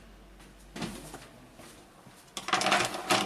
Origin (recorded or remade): recorded